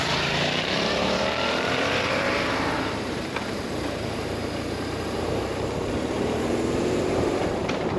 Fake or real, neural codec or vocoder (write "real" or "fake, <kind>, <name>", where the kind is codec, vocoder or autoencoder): fake, vocoder, BigVGAN v2